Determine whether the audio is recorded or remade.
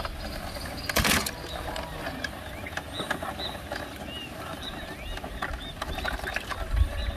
recorded